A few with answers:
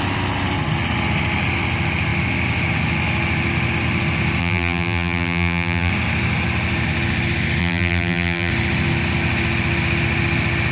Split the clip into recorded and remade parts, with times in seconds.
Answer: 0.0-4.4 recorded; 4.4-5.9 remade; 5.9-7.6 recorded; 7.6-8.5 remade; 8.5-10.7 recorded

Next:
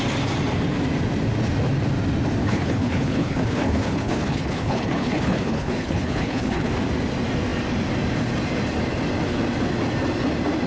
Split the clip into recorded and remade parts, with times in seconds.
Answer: 0.0-2.4 recorded; 2.4-6.7 remade; 6.7-10.7 recorded

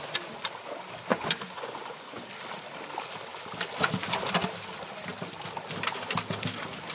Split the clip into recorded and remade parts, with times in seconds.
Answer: 0.0-1.1 recorded; 1.1-2.2 remade; 2.2-6.9 recorded